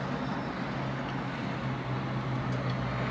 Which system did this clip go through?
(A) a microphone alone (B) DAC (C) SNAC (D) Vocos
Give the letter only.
A